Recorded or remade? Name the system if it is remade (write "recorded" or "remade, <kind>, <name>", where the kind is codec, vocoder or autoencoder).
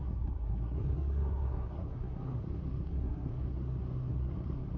remade, codec, SNAC